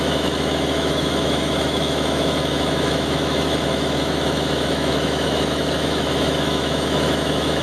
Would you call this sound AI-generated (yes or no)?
yes